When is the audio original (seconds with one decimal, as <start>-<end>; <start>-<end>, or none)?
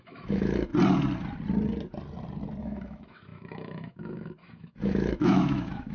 0.7-2.6